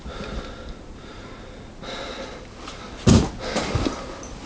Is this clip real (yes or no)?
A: yes